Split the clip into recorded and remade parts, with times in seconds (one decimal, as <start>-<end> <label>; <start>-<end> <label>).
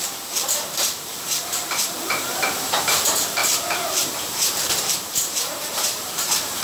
0.0-6.6 remade